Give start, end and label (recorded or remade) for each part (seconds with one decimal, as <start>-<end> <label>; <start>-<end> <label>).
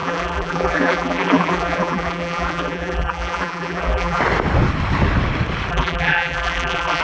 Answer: 0.0-4.2 remade; 4.2-5.7 recorded; 5.7-7.0 remade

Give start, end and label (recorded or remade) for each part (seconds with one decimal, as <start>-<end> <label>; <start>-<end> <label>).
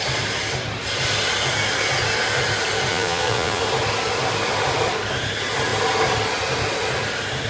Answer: 0.0-2.9 recorded; 2.9-3.6 remade; 3.6-7.5 recorded